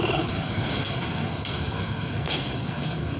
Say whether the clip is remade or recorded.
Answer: remade